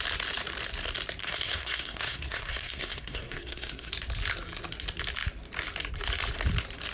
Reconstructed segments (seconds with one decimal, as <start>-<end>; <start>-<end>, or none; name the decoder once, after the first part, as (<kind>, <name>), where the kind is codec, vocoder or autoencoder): 1.2-3.9 (codec, SNAC)